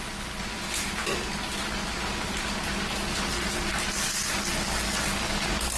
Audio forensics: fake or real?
real